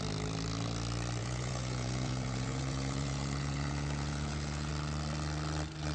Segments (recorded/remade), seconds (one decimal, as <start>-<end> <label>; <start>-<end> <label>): 0.0-1.2 recorded; 1.2-4.7 remade; 4.7-5.9 recorded